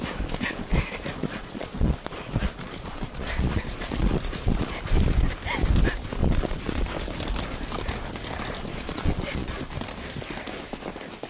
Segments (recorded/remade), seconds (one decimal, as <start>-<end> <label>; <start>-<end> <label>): 0.0-1.2 recorded; 1.2-4.7 remade; 4.7-6.2 recorded; 6.2-6.9 remade; 6.9-8.7 recorded; 8.7-9.6 remade; 9.6-11.3 recorded